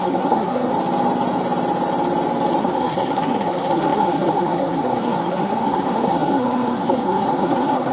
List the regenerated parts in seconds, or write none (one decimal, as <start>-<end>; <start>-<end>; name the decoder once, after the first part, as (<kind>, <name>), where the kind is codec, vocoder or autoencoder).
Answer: 0.0-0.7 (codec, SNAC); 2.6-7.9